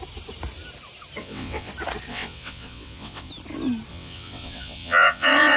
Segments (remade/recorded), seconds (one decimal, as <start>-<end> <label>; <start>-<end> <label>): 0.0-1.2 recorded; 1.2-1.7 remade; 1.7-2.1 recorded; 2.1-3.3 remade; 3.3-3.9 recorded; 3.9-5.6 remade